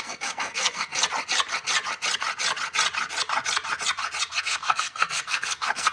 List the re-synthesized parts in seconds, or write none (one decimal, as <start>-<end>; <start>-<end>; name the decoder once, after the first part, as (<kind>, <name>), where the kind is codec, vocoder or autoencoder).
0.0-0.9 (codec, SNAC); 4.4-5.9